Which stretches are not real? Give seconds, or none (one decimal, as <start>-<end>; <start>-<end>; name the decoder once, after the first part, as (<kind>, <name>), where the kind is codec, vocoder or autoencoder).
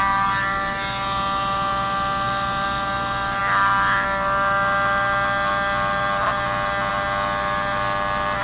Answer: none